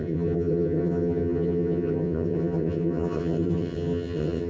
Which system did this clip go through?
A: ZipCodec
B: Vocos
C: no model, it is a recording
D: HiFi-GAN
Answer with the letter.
D